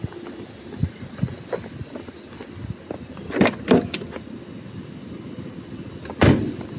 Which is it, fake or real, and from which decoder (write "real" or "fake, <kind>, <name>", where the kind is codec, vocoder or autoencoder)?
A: real